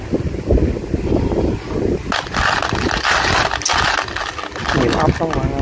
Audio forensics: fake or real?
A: real